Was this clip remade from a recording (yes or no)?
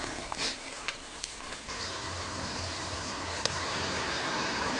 yes